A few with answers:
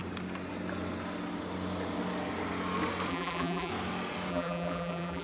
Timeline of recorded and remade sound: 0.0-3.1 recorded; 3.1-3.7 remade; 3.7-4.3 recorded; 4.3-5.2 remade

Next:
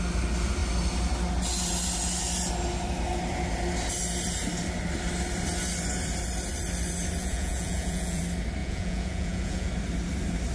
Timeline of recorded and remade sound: 0.0-7.2 recorded; 7.2-8.2 remade; 8.2-8.6 recorded; 8.6-9.7 remade; 9.7-10.5 recorded